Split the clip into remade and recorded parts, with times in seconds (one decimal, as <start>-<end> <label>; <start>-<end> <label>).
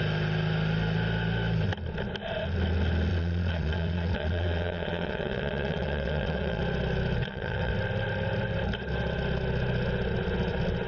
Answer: 0.0-3.1 recorded; 3.1-6.6 remade; 6.6-7.2 recorded; 7.2-7.7 remade; 7.7-10.9 recorded